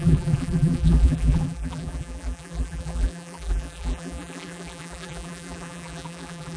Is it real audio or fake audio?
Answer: fake